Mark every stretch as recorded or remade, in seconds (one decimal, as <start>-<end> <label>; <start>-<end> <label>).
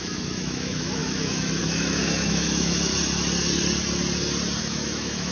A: 0.0-2.9 remade; 2.9-4.6 recorded; 4.6-5.3 remade